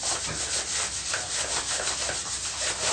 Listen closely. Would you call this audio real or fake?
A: fake